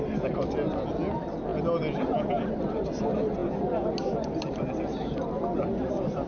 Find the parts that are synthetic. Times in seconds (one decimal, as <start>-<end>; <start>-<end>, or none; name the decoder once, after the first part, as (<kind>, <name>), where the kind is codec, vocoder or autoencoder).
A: none